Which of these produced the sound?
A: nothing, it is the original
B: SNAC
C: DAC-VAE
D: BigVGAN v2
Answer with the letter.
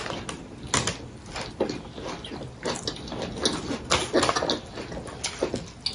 A